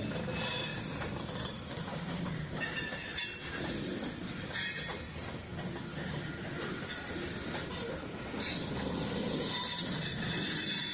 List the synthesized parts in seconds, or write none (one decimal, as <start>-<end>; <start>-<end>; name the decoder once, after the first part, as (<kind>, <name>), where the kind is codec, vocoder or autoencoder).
none